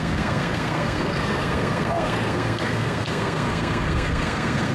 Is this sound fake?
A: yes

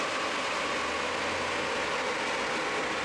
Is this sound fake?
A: no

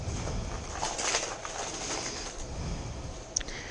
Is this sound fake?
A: no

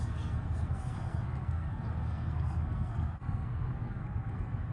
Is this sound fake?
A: yes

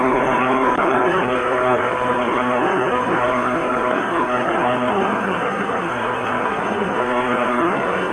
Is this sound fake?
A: yes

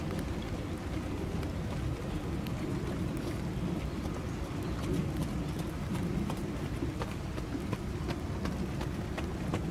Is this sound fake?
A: no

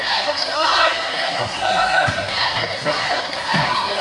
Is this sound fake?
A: yes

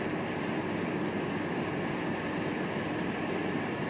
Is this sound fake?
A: no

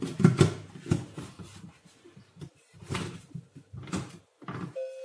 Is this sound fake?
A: no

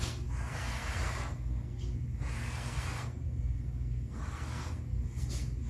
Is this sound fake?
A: yes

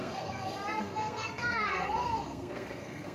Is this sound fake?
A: yes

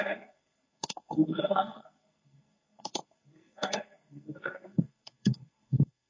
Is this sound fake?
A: yes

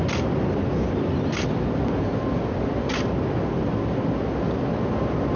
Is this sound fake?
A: no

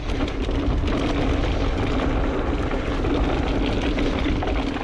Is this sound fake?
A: no